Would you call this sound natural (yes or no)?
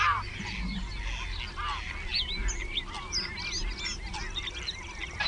yes